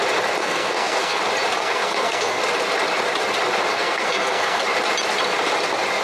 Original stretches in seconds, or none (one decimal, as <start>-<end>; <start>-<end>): 0.0-0.4; 1.2-1.6; 2.4-3.7; 4.6-6.0